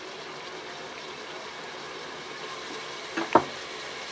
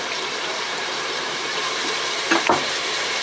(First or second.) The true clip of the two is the first